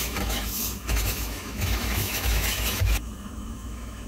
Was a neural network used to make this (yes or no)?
yes